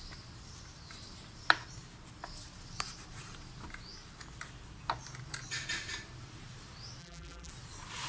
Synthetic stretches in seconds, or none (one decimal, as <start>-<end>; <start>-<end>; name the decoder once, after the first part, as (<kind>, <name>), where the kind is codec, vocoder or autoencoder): 7.0-7.5 (vocoder, BigVGAN v2)